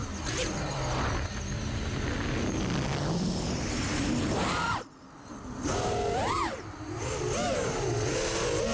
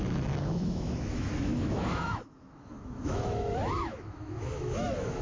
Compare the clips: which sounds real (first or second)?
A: first